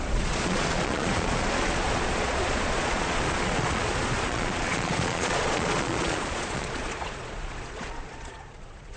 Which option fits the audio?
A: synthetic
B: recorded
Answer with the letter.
A